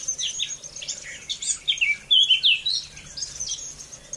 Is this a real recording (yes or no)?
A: yes